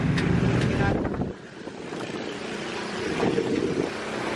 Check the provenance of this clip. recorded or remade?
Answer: recorded